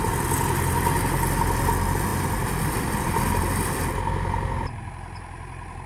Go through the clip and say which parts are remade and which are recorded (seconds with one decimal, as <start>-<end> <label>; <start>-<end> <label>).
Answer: 0.0-2.1 recorded; 2.1-5.9 remade